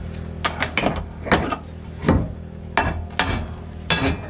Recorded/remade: recorded